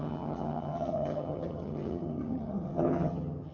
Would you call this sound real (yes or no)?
no